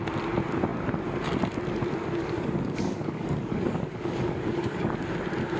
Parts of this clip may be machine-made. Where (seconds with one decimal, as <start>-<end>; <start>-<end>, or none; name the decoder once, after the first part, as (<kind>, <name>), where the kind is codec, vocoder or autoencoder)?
2.2-4.9 (codec, DAC)